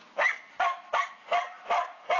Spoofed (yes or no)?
no